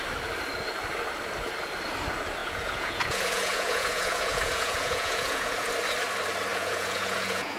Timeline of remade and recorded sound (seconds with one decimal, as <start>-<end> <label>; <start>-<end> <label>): 0.0-2.4 recorded; 2.4-5.7 remade; 5.7-6.5 recorded; 6.5-7.6 remade